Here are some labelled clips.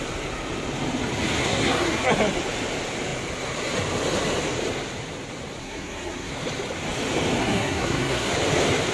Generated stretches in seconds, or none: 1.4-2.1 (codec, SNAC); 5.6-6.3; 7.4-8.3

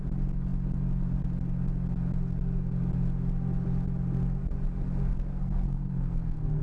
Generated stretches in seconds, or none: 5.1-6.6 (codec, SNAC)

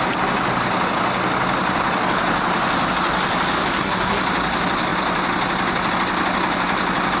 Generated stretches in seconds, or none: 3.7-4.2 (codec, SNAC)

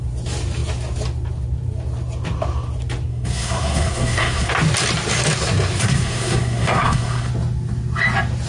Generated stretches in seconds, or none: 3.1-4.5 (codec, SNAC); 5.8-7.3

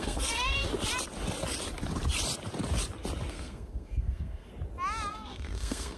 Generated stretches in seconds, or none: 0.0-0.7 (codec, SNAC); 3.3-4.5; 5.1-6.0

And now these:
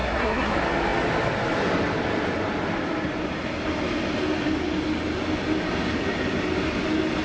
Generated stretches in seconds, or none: 0.0-0.5 (codec, SNAC)

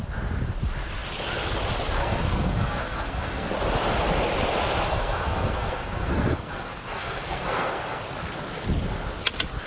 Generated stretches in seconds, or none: 2.0-3.5 (codec, SNAC); 4.9-8.0